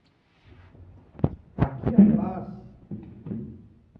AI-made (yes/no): yes